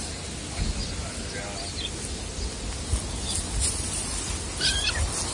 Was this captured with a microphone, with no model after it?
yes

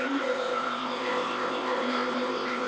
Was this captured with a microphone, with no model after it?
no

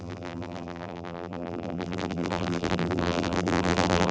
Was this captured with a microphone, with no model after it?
no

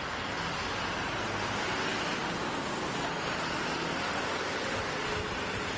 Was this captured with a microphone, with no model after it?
yes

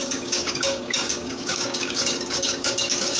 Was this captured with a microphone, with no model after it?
no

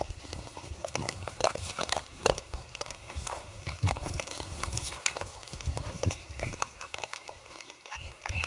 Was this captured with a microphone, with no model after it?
no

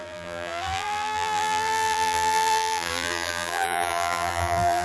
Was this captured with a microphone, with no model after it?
no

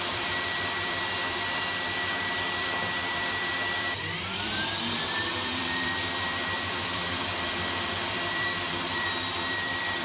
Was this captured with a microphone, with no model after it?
no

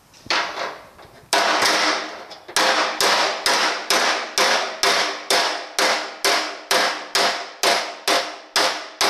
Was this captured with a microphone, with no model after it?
yes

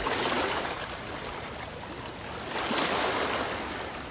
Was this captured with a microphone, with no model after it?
yes